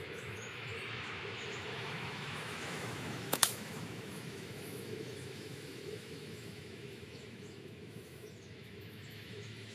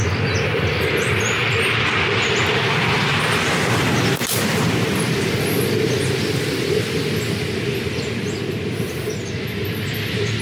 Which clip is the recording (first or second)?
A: second